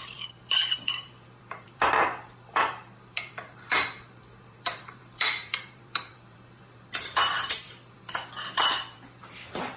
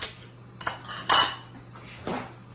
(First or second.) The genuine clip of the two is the second